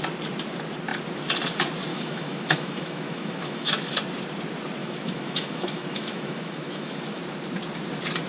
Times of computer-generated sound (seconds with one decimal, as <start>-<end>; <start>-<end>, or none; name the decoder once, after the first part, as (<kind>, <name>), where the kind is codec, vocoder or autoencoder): 1.9-3.9 (autoencoder, DAC-VAE); 4.8-7.2